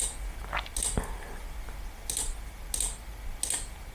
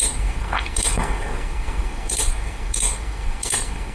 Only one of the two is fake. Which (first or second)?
second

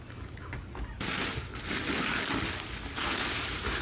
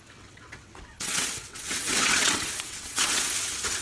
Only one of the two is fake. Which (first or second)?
second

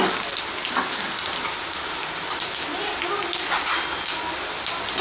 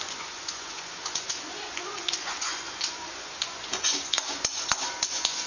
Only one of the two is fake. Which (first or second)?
second